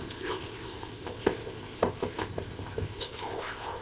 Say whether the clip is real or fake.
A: fake